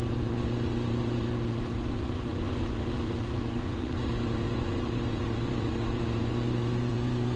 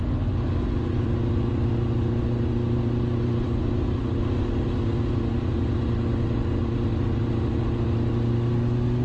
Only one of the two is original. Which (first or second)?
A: second